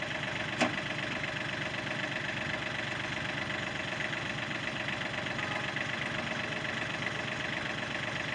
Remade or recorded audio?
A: recorded